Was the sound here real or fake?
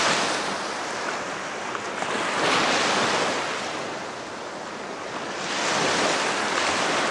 real